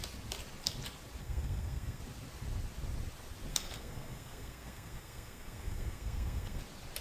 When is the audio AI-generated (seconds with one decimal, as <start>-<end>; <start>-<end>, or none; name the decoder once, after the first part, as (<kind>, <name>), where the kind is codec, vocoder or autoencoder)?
1.2-2.0 (codec, SNAC); 3.5-6.6